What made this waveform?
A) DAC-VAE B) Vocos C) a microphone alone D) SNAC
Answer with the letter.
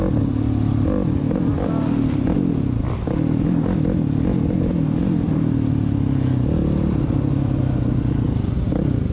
C